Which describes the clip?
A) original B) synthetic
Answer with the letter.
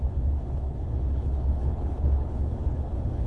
B